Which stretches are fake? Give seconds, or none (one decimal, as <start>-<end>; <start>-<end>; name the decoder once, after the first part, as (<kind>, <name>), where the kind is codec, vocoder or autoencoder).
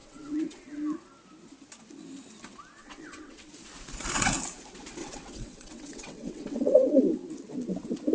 0.0-0.6 (vocoder, WaveNeXt); 2.8-3.5; 5.0-7.0